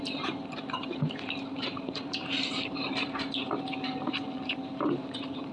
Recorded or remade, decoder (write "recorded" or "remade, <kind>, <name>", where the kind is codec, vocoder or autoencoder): remade, vocoder, BigVGAN v2